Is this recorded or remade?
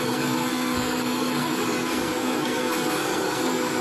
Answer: remade